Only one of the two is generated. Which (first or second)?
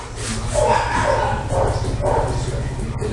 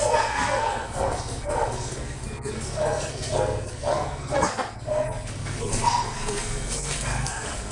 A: second